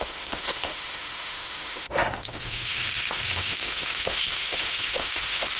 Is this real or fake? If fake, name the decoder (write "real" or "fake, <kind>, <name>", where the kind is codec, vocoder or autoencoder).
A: fake, autoencoder, DAC-VAE